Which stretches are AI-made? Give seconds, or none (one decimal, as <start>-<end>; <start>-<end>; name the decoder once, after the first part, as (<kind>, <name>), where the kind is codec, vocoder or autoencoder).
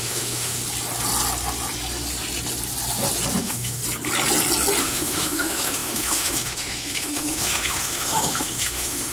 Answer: 0.0-0.6 (autoencoder, DAC-VAE); 3.4-3.8; 4.8-9.1